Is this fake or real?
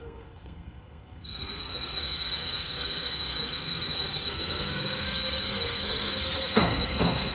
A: fake